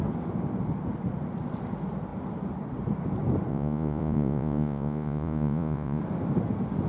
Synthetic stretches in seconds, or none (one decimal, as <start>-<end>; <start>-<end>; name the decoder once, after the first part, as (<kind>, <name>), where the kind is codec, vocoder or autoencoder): 3.5-6.0 (vocoder, Vocos)